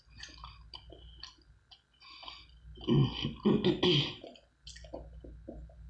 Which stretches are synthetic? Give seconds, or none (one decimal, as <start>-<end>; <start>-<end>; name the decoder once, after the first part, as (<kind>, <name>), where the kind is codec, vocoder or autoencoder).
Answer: none